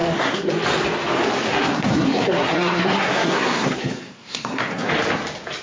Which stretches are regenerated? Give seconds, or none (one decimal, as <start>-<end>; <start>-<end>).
0.0-0.5; 1.5-4.9